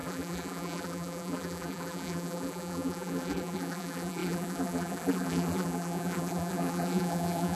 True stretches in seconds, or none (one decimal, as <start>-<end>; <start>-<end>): none